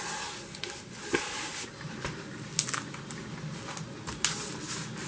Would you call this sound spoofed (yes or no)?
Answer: no